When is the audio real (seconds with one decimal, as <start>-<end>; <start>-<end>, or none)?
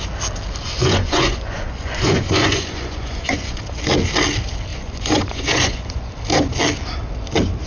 0.0-0.6; 3.6-4.7; 6.1-7.7